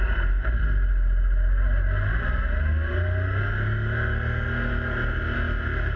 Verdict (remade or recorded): recorded